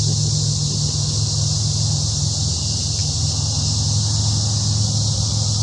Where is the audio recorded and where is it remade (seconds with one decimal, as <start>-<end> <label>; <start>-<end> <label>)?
0.0-5.6 recorded